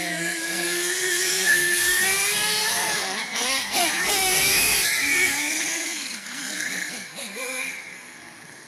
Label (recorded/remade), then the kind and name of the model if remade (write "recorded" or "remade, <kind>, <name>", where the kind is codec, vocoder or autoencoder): remade, codec, SNAC